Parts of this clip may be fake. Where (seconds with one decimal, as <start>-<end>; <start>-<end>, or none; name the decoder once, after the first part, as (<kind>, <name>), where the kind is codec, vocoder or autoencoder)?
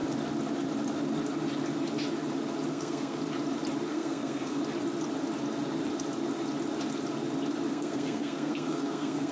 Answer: 2.7-3.2 (codec, SNAC); 3.9-4.6; 7.7-9.3